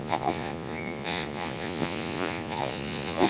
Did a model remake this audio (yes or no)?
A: yes